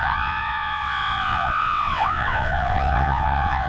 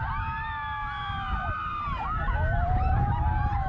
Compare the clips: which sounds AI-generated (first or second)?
first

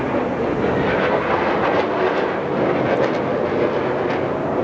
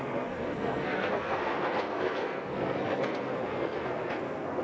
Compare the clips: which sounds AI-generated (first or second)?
second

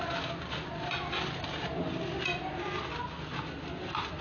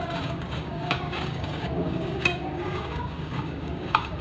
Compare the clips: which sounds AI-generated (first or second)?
second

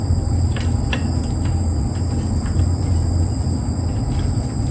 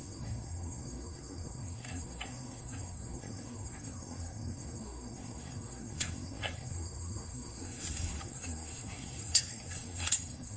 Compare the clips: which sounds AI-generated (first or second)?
second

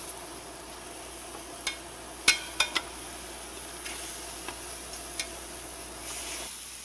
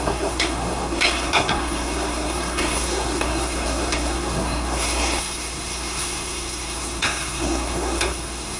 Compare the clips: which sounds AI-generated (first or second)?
second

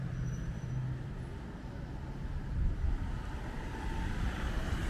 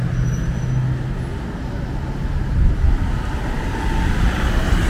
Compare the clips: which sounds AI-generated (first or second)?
first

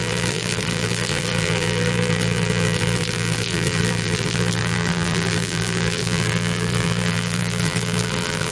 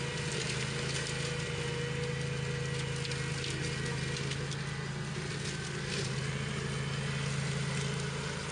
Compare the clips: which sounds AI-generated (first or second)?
first